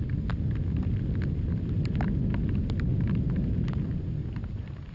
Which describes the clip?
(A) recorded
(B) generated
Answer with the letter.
A